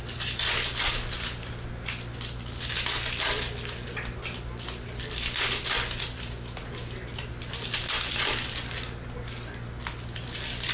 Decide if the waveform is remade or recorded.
recorded